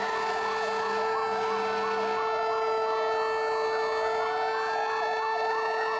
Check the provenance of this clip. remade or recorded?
recorded